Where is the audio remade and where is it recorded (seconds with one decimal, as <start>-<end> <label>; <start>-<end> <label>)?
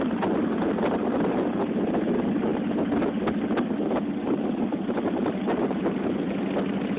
0.0-7.0 recorded